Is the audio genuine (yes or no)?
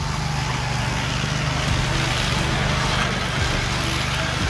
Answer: yes